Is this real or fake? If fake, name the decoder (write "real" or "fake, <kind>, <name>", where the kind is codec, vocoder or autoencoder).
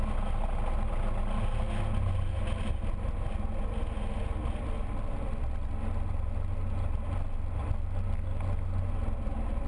real